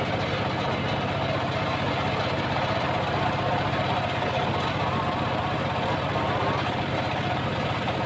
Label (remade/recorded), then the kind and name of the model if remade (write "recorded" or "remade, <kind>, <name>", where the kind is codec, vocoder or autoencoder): recorded